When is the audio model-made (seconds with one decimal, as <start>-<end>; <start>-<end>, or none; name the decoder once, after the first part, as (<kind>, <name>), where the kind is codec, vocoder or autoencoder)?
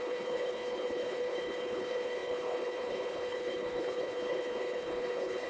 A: 0.0-5.5 (codec, HILCodec)